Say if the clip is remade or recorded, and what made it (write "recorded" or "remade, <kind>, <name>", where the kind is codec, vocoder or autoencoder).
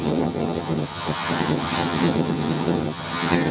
remade, vocoder, HiFi-GAN